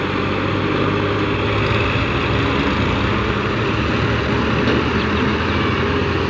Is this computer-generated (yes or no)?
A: no